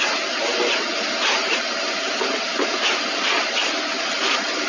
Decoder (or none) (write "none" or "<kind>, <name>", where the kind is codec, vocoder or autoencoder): none